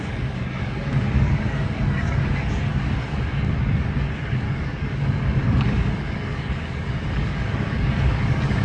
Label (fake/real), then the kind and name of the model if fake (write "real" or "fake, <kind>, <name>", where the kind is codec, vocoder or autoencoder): fake, codec, DAC